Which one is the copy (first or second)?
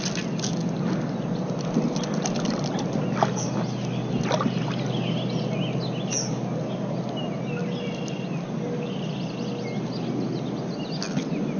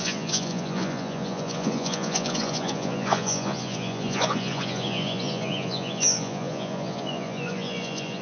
second